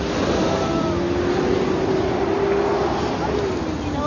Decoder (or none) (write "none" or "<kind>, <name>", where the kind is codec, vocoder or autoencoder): none